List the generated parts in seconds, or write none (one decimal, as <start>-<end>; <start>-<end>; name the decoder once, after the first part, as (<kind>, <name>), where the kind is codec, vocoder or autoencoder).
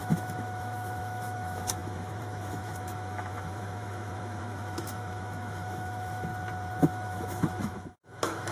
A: 0.0-6.3 (autoencoder, DAC-VAE); 6.8-8.5